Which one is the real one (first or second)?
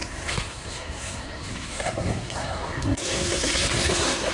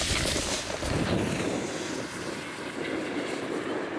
second